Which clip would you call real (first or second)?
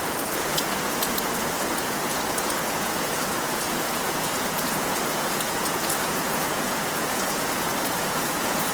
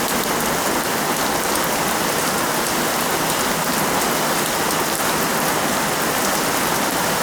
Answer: second